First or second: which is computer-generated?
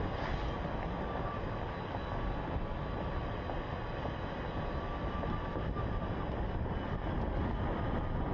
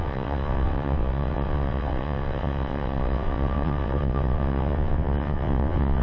second